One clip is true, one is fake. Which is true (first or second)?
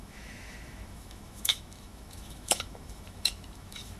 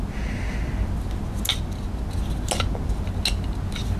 second